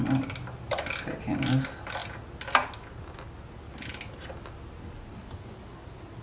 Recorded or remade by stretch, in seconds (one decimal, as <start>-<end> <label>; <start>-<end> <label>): 0.0-6.2 recorded